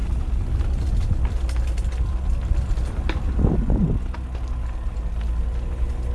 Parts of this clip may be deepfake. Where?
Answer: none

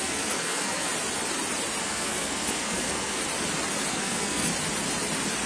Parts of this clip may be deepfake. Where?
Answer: 0.0-0.9; 1.8-3.2; 3.9-4.5

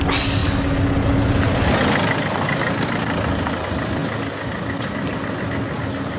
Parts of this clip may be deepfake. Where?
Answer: none

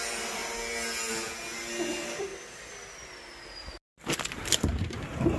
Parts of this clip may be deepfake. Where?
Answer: 0.0-0.4; 1.9-2.3; 4.3-5.4

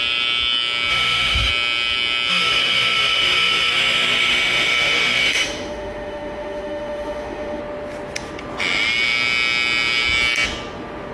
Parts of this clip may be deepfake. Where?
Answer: 0.9-1.5; 2.3-7.6

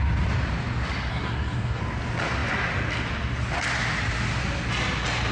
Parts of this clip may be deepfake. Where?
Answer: 1.1-1.8

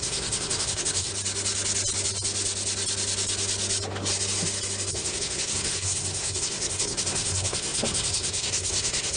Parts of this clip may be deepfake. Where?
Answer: 0.0-1.1; 4.9-9.2